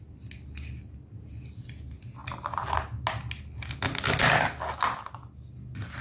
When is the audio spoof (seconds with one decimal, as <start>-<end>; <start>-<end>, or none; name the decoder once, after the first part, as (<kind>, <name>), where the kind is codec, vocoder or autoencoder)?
none